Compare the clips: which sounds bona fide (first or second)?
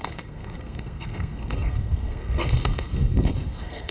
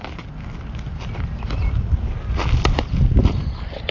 second